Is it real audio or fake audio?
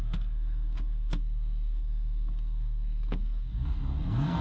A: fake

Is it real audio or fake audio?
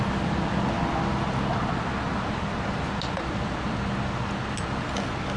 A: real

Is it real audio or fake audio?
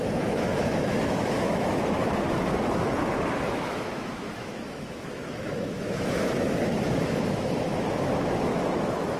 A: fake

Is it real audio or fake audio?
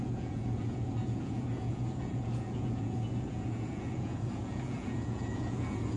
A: fake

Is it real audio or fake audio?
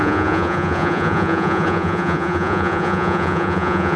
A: fake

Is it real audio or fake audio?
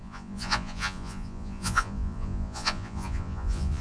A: fake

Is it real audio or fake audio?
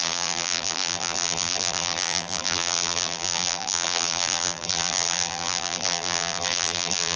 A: fake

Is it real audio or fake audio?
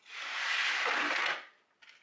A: real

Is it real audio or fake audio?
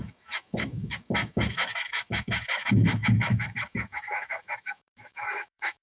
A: fake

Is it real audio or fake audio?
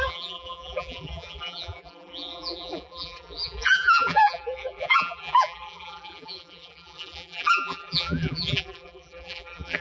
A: fake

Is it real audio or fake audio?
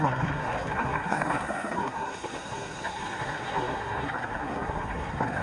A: fake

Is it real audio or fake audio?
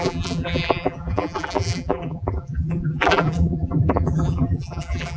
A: fake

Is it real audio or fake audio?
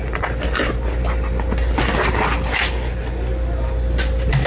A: real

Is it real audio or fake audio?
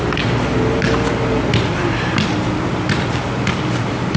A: real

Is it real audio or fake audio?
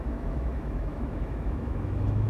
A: fake